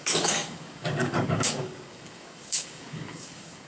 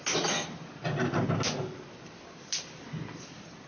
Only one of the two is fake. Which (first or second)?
first